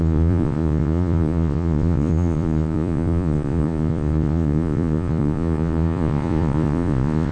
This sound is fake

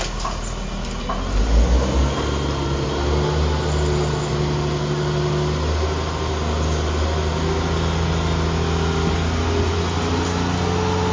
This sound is real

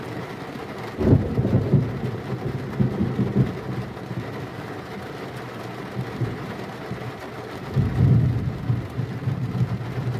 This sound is real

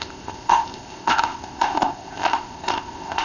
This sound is fake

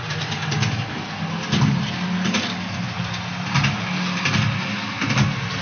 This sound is real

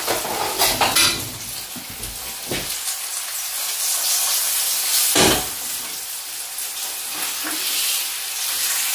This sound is real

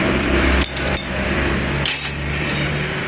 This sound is fake